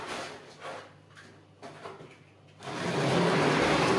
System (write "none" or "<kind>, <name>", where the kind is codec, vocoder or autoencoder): none